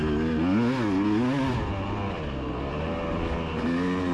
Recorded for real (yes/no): yes